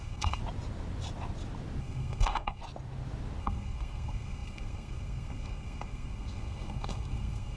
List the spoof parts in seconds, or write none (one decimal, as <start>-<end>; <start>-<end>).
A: 0.0-0.4; 1.8-2.6; 3.4-7.6